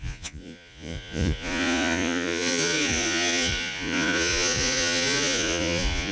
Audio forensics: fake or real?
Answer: fake